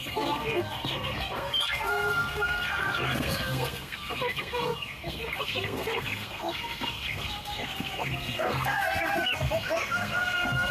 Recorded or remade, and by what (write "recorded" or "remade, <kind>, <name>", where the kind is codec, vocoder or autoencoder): remade, codec, SNAC